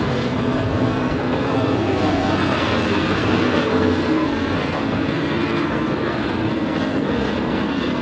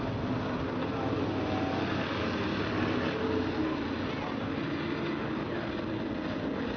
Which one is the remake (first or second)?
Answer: first